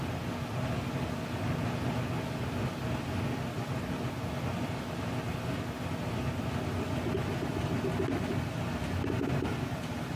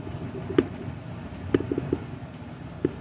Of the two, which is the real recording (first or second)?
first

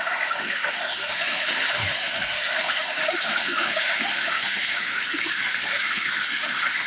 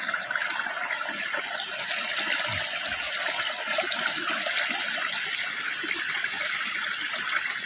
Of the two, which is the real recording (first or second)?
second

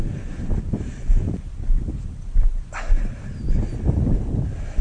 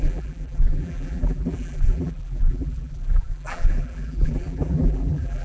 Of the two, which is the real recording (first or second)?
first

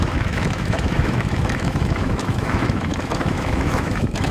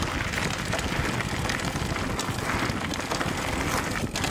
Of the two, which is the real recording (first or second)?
second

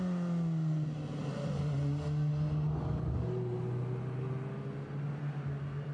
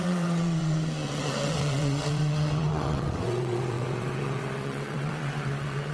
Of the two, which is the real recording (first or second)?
first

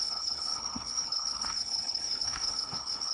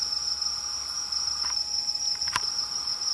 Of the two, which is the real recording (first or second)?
second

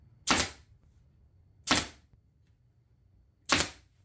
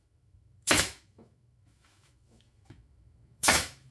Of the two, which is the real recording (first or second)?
first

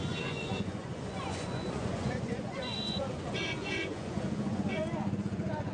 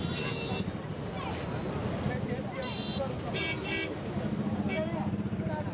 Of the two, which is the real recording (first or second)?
second